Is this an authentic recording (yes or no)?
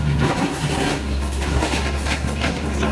no